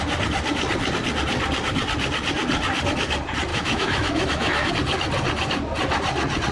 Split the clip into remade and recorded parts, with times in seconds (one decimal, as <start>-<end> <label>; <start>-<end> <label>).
0.0-3.5 recorded; 3.5-4.7 remade; 4.7-6.5 recorded